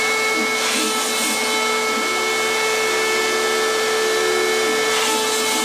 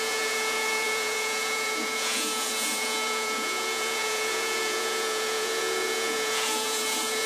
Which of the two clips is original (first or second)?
first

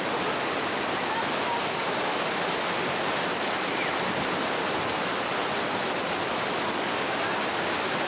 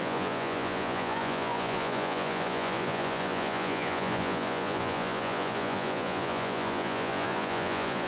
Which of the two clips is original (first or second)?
first